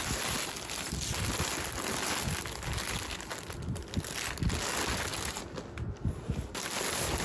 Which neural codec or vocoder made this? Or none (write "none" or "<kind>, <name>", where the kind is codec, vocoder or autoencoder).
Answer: none